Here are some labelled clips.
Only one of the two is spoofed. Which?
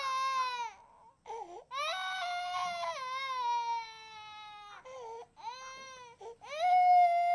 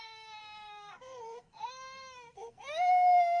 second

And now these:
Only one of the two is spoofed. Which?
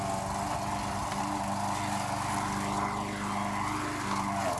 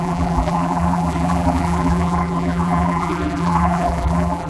second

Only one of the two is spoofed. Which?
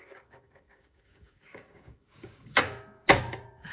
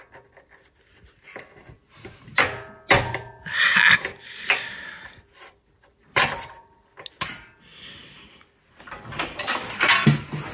first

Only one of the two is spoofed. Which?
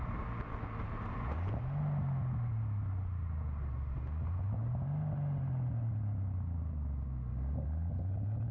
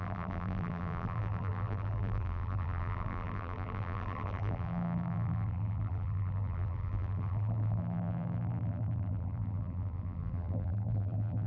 second